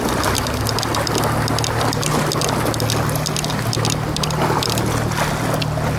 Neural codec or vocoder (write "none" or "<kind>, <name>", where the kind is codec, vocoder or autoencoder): none